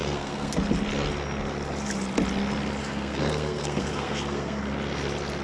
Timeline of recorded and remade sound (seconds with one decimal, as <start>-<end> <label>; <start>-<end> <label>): 0.0-0.6 remade; 0.6-2.8 recorded; 2.8-4.6 remade; 4.6-5.4 recorded